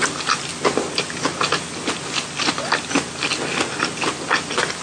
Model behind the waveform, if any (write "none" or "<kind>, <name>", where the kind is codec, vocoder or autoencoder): none